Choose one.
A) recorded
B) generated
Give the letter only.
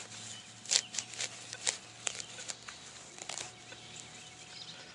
A